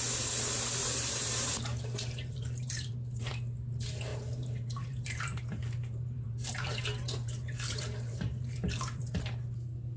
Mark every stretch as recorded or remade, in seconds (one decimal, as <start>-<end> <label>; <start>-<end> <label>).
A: 0.0-0.8 recorded; 0.8-3.3 remade; 3.3-4.1 recorded; 4.1-9.0 remade; 9.0-10.0 recorded